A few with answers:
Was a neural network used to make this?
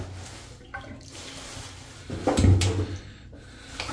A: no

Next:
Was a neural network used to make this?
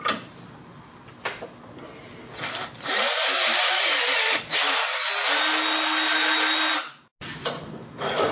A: no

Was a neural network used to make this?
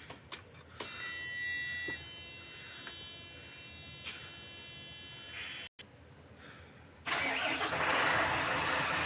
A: no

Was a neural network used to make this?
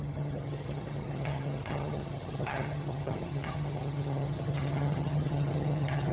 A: yes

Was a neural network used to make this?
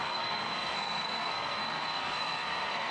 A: yes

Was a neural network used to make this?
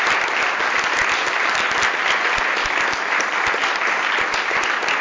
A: no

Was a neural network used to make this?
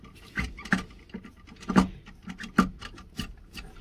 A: no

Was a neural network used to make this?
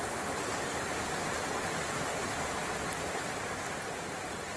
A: no